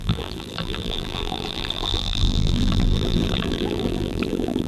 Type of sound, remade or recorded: remade